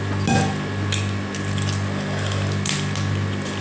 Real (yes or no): yes